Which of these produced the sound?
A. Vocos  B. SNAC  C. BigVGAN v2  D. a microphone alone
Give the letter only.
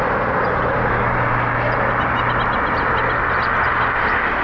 D